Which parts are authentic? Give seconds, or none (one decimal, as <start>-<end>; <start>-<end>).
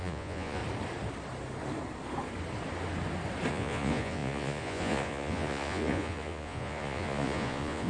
0.6-3.5